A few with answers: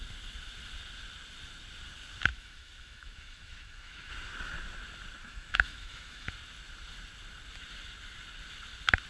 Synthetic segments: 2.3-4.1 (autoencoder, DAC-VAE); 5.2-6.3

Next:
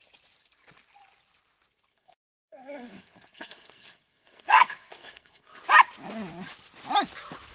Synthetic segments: 1.9-5.6 (codec, SNAC)

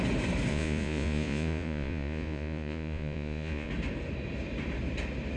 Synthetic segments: 0.5-3.7 (vocoder, Vocos)

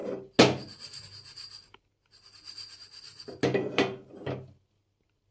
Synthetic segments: none

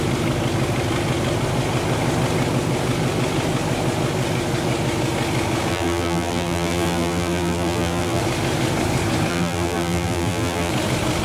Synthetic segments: 5.7-8.2 (vocoder, BigVGAN v2); 9.3-10.7

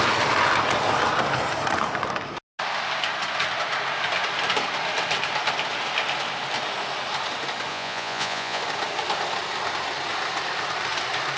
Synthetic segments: 7.7-8.6 (vocoder, Vocos)

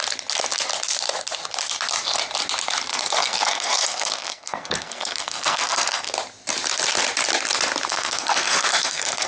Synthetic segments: 2.9-6.1 (codec, SNAC); 7.9-9.3

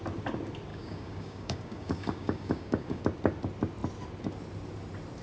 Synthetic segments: 0.7-3.0 (codec, DAC)